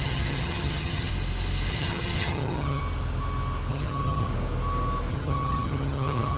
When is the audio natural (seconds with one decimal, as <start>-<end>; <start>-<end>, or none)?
1.1-1.7; 2.8-3.7; 4.3-5.1